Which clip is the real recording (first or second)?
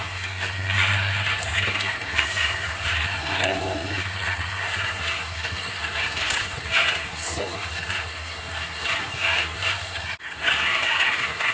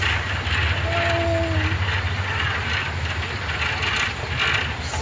second